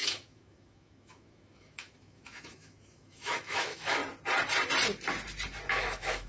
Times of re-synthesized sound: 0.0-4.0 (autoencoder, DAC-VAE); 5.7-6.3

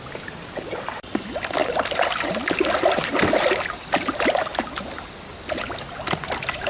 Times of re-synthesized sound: none